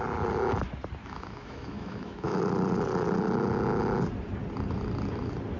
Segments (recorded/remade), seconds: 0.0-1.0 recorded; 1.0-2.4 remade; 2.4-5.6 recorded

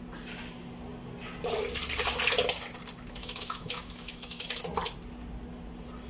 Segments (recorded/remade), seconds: 0.0-3.2 recorded; 3.2-4.6 remade; 4.6-6.1 recorded

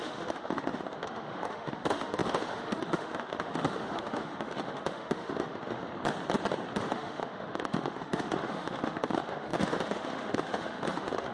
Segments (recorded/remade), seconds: 0.0-5.8 remade; 5.8-6.9 recorded; 6.9-11.3 remade

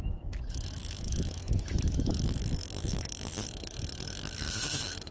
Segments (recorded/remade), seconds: 0.0-5.1 remade

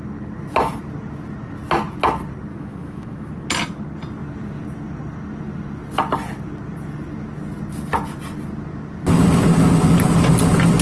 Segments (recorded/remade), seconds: 0.0-2.5 recorded; 2.5-3.3 remade; 3.3-10.8 recorded

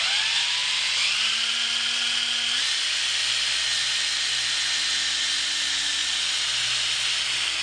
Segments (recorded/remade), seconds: 0.0-7.6 recorded